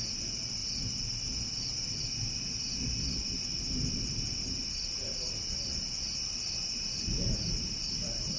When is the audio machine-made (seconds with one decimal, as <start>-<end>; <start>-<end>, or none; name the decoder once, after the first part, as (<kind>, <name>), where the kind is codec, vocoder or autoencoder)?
none